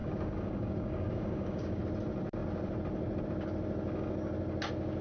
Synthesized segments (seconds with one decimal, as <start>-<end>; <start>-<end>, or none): 0.0-1.8